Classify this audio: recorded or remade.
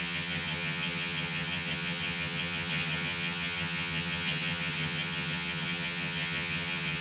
remade